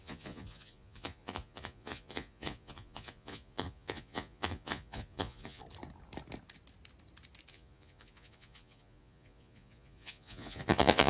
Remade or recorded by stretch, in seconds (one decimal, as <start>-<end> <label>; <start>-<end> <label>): 0.0-5.6 remade; 5.6-7.5 recorded; 7.5-11.1 remade